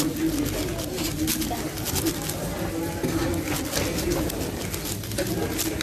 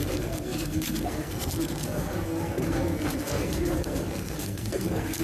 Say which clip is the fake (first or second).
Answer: second